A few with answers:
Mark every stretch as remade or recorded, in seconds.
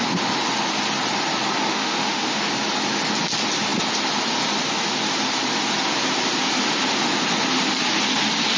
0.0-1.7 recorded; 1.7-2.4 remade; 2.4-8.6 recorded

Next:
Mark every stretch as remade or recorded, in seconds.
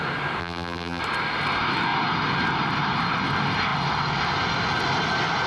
0.0-0.4 recorded; 0.4-1.0 remade; 1.0-5.5 recorded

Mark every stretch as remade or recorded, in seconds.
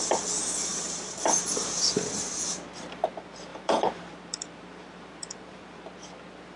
0.0-0.4 recorded; 0.4-1.4 remade; 1.4-3.5 recorded; 3.5-5.8 remade; 5.8-6.6 recorded